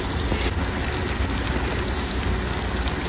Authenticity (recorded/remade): recorded